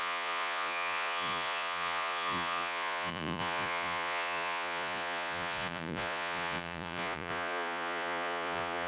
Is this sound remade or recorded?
remade